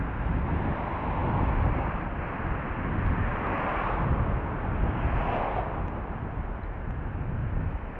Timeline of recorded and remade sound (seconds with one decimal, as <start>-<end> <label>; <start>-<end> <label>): 0.0-8.0 recorded